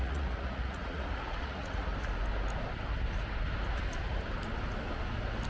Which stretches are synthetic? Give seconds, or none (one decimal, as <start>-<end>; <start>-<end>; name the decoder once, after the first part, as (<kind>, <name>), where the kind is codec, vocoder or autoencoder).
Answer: 0.0-1.9 (vocoder, Vocos)